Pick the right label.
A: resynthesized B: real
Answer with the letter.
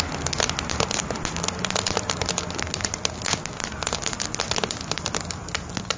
B